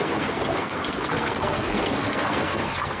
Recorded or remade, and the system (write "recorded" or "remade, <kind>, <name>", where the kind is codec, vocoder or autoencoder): remade, codec, SNAC